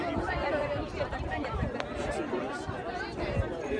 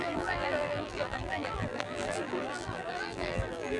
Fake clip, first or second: second